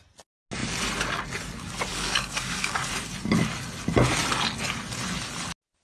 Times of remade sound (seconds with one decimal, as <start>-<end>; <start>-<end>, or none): 1.9-2.9